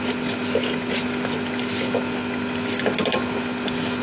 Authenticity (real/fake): real